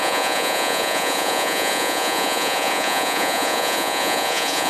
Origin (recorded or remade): remade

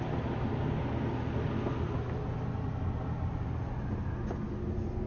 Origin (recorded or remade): recorded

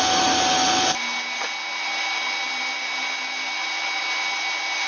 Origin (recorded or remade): recorded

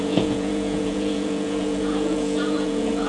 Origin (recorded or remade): remade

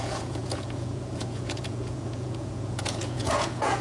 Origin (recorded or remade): remade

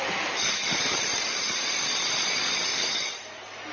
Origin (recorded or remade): recorded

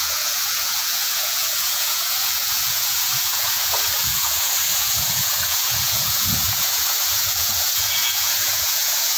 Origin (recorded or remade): remade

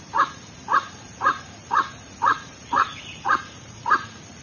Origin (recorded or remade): remade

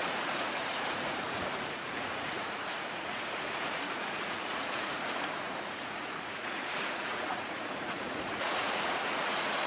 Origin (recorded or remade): remade